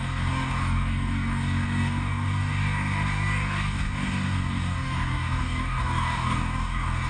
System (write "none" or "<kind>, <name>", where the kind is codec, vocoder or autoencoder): codec, DAC